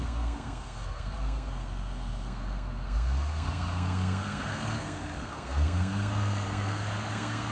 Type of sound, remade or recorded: remade